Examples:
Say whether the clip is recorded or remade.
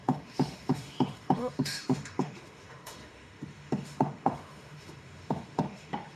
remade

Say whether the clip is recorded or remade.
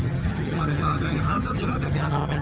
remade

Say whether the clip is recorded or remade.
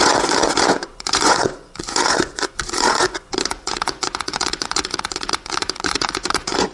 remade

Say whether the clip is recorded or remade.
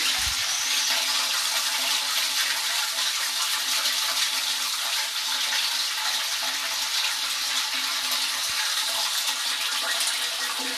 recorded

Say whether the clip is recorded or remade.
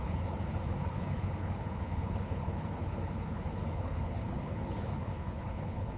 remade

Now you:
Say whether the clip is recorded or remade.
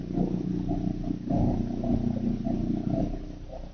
recorded